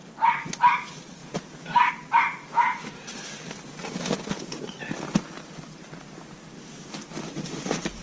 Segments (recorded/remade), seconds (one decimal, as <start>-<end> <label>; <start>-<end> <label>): 0.0-1.2 recorded; 1.2-1.9 remade; 1.9-8.0 recorded